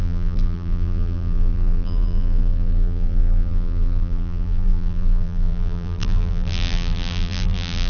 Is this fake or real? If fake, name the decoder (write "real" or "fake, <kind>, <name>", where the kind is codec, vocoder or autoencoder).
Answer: fake, vocoder, BigVGAN v2